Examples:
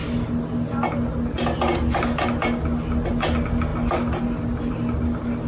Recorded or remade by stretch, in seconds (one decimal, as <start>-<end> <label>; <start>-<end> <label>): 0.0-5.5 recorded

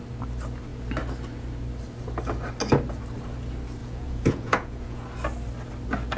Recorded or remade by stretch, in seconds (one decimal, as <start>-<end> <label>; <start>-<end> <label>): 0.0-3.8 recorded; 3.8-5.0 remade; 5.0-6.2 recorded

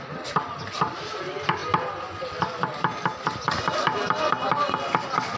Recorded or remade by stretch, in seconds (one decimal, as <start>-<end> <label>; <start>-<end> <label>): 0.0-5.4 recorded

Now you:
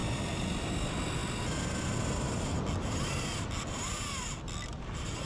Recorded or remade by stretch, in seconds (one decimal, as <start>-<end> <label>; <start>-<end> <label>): 0.0-5.3 recorded